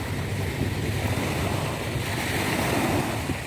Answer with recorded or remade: recorded